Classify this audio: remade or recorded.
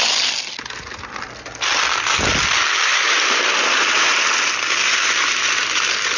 recorded